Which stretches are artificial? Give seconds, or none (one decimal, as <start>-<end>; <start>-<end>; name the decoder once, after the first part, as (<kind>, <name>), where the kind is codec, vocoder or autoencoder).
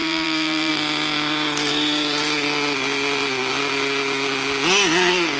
0.0-0.7 (vocoder, BigVGAN v2)